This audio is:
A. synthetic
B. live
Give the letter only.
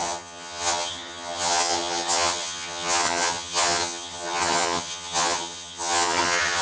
A